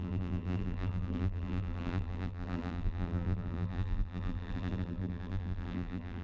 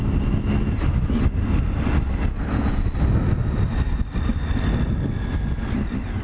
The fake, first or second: first